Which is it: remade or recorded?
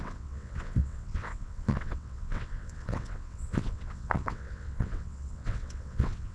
remade